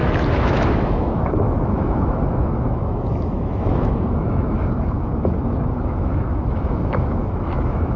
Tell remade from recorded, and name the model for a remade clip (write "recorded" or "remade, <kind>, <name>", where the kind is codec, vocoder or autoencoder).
remade, autoencoder, DAC-VAE